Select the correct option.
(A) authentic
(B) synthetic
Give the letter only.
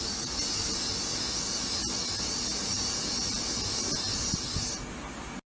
A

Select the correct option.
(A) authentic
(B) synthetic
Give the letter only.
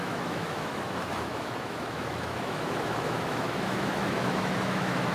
B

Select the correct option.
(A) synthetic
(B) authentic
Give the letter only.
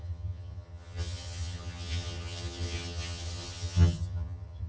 A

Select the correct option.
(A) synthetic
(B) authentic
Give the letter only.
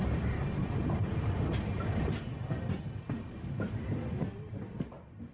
B